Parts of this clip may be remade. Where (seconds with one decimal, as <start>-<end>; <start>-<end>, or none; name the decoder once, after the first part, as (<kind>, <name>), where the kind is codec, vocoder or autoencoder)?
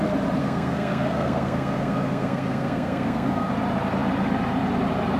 0.4-3.5 (codec, SNAC)